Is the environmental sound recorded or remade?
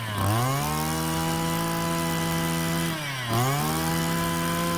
recorded